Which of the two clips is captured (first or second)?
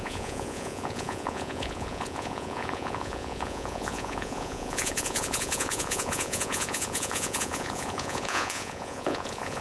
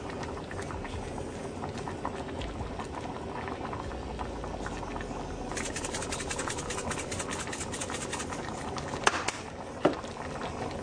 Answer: second